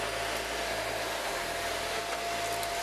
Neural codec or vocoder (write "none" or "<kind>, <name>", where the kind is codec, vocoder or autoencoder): none